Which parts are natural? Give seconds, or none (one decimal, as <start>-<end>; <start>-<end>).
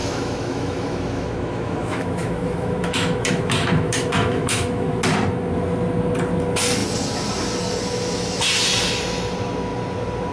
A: 5.0-10.3